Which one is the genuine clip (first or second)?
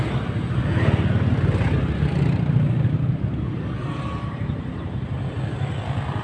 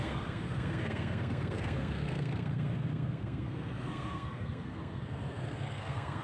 first